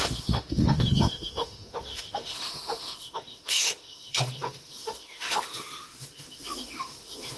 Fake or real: fake